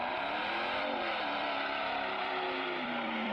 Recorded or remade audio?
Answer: remade